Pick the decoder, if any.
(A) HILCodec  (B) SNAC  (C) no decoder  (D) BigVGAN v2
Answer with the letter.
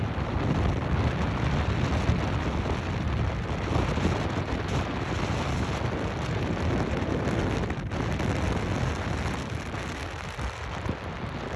C